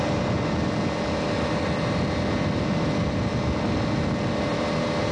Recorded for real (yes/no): yes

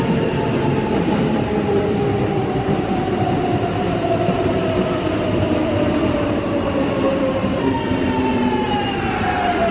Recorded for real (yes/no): no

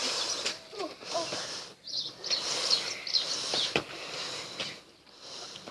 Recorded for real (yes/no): no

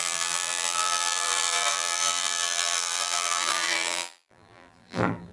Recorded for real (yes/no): no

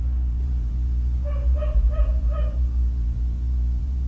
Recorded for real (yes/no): no